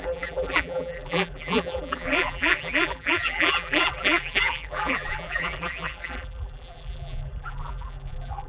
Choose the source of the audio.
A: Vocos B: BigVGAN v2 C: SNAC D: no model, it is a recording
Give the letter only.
B